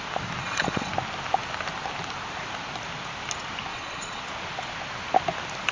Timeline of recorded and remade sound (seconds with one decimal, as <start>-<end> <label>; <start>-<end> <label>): 0.0-0.4 recorded; 0.4-0.9 remade; 0.9-3.7 recorded; 3.7-4.2 remade; 4.2-5.7 recorded